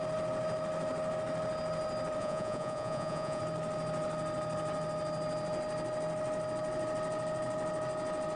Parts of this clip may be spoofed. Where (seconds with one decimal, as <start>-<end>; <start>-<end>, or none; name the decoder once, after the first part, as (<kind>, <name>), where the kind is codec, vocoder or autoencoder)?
2.2-3.4 (vocoder, Vocos)